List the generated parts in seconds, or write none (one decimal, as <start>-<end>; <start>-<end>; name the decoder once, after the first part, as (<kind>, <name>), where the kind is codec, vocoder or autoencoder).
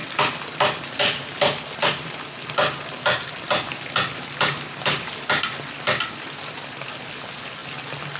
none